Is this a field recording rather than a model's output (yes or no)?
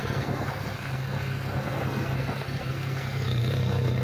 no